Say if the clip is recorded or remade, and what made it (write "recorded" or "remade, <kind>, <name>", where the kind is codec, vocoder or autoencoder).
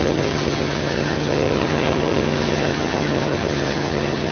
remade, vocoder, HiFi-GAN